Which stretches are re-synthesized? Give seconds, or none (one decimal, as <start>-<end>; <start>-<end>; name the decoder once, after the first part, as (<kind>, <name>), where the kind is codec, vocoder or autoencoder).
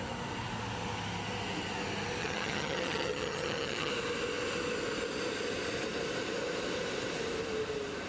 2.2-3.9 (vocoder, HiFi-GAN)